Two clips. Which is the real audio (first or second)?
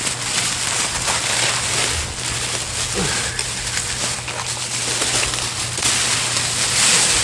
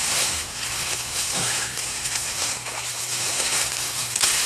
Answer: first